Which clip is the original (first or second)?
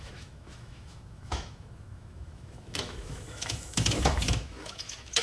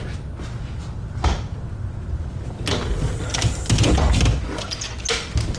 second